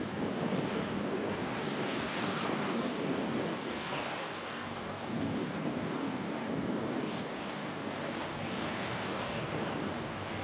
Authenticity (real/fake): fake